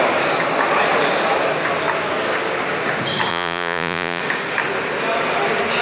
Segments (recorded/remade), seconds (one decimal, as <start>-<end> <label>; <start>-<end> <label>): 0.0-3.3 recorded; 3.3-4.2 remade; 4.2-5.8 recorded